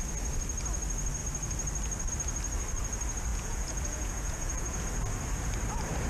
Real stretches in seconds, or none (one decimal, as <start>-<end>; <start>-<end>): 0.0-3.3; 4.8-6.1